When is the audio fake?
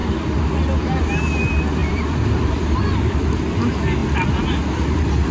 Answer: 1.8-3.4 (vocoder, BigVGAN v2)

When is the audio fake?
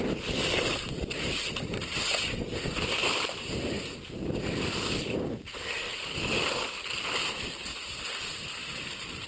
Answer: none